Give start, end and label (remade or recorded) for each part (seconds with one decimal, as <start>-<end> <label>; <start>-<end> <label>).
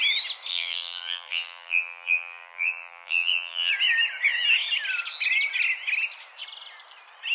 0.0-0.5 recorded; 0.5-3.7 remade; 3.7-7.3 recorded